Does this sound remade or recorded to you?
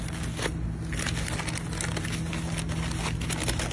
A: recorded